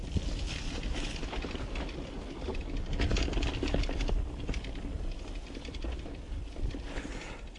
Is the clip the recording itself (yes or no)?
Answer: yes